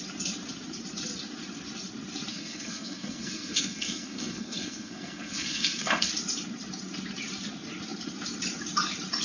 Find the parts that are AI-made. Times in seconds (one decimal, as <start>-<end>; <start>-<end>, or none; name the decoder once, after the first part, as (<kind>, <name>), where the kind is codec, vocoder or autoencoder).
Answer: 2.3-6.1 (codec, SNAC)

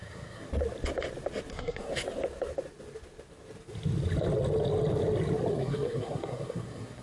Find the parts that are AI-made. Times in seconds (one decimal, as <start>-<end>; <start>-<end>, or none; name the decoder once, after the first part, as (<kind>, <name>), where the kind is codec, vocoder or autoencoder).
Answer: 0.0-0.5 (codec, SNAC); 1.5-1.9; 5.5-7.0

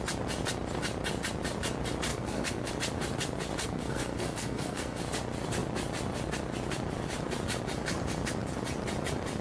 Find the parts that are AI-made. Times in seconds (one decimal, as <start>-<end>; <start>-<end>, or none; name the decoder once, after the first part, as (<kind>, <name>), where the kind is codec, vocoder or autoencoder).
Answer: 2.1-2.7 (codec, SNAC); 3.6-5.0

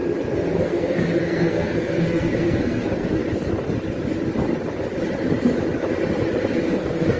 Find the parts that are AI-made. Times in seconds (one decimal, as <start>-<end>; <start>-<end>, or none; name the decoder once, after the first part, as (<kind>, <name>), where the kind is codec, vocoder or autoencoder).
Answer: 0.5-3.2 (codec, SNAC); 6.7-7.2

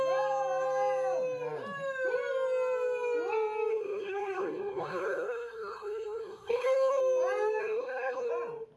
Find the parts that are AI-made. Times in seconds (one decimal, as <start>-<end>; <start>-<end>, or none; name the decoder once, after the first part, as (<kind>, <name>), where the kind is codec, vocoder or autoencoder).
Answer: 3.7-7.0 (codec, SNAC); 7.6-8.3